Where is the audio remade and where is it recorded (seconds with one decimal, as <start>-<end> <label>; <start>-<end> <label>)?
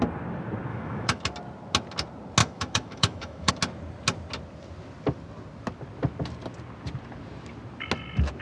0.0-0.7 recorded; 0.7-1.2 remade; 1.2-2.4 recorded; 2.4-3.5 remade; 3.5-8.4 recorded